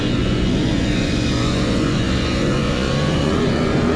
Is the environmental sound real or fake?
fake